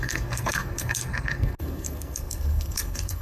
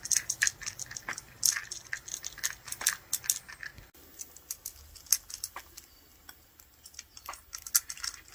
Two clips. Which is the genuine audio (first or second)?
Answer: second